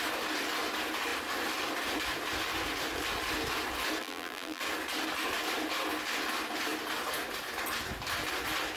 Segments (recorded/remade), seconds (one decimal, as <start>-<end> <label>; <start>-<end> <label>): 0.0-4.0 recorded; 4.0-4.6 remade; 4.6-8.8 recorded